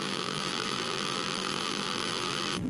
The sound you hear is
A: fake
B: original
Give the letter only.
A